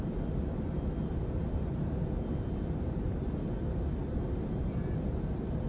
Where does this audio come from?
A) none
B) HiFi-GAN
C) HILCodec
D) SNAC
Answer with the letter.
A